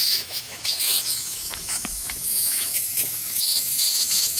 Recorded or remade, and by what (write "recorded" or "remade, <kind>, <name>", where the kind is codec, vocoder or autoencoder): remade, autoencoder, DAC-VAE